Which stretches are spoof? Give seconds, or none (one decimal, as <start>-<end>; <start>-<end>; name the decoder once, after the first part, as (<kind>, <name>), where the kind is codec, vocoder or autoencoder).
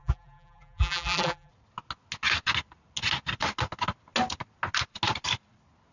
0.0-1.5 (vocoder, BigVGAN v2)